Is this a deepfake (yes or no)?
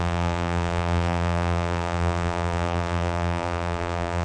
yes